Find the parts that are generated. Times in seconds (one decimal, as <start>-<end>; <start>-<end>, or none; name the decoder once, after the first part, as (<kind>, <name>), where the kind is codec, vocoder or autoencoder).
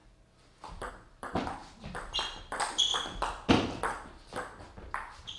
0.0-2.9 (vocoder, BigVGAN v2); 3.5-5.4